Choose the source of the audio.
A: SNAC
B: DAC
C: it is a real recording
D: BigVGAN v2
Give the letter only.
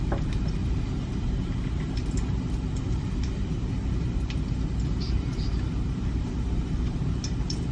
D